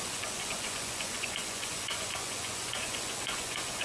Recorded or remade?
remade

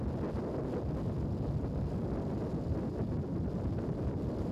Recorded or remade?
recorded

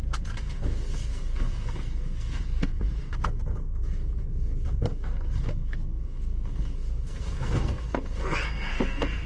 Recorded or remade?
remade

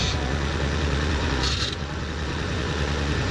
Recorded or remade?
remade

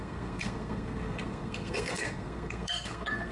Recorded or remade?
remade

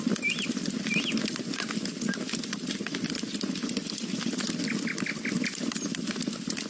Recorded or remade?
recorded